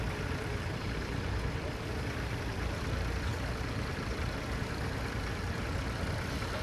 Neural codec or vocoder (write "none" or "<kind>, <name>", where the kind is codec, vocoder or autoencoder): none